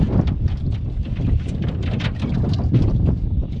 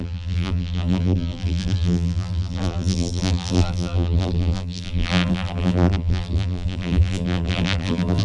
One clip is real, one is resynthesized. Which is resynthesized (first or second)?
second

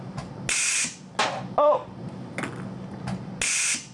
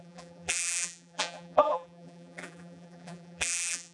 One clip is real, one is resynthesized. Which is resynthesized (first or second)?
second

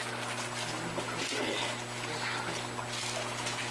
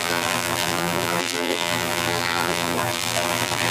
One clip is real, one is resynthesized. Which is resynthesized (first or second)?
second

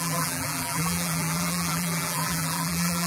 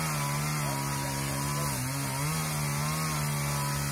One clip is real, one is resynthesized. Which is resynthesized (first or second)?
first